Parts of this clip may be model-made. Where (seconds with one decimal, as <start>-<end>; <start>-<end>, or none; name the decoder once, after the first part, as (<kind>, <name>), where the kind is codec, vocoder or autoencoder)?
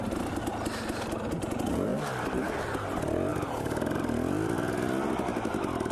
1.9-2.6 (vocoder, BigVGAN v2); 3.3-5.1